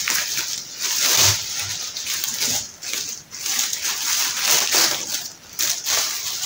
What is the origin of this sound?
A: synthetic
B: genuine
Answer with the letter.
B